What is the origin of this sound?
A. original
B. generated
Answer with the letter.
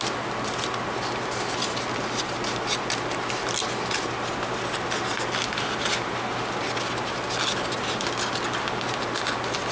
A